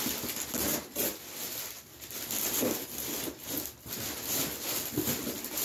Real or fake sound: real